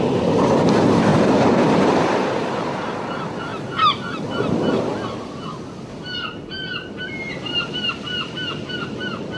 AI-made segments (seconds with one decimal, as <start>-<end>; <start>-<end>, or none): 1.1-2.5